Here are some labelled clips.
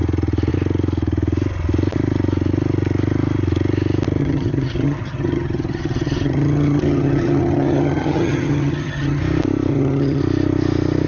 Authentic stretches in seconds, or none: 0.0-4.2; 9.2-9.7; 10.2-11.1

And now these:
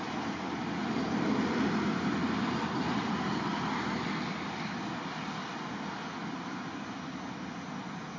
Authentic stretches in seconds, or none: 0.0-8.2

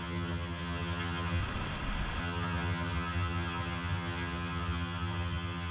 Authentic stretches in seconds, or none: 1.4-2.2

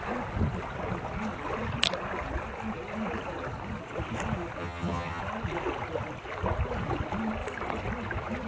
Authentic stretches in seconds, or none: 0.0-4.6; 5.2-8.5

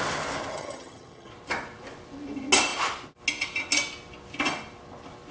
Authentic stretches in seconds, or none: 0.0-0.5; 1.3-5.3

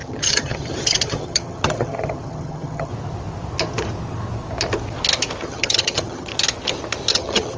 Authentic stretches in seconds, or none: 2.9-5.4; 6.3-7.1

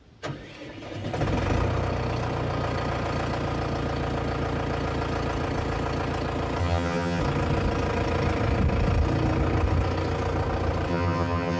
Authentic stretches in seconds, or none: 0.0-6.6; 7.2-10.9